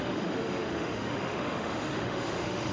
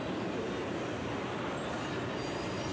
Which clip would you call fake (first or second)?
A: first